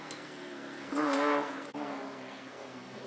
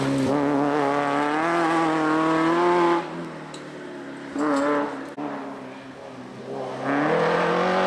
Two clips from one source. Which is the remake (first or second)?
first